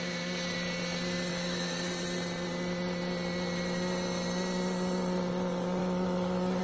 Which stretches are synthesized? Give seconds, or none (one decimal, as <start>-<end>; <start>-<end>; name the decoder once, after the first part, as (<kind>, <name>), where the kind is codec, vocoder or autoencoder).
1.3-1.9 (autoencoder, DAC-VAE); 5.8-6.6